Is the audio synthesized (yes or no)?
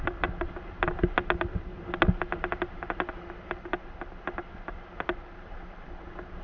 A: no